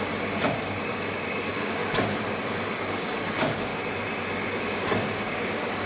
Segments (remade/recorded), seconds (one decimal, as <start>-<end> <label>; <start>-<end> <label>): 0.0-1.8 remade; 1.8-2.4 recorded; 2.4-3.7 remade; 3.7-4.6 recorded; 4.6-5.9 remade